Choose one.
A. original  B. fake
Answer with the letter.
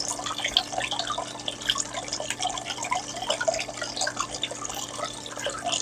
A